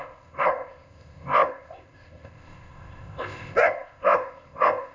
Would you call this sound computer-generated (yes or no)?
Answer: yes